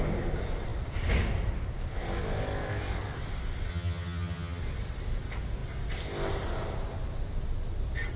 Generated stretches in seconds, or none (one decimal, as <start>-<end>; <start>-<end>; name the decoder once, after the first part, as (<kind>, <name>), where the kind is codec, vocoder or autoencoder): 3.7-4.6 (vocoder, HiFi-GAN)